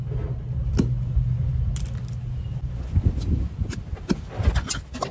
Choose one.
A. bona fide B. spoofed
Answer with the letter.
A